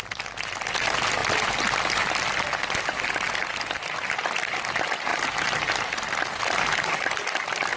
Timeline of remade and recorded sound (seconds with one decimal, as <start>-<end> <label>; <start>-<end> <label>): 0.0-7.8 recorded